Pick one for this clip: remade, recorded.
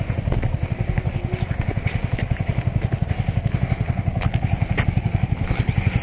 recorded